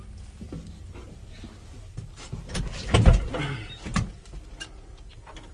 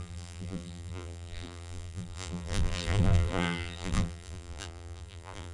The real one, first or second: first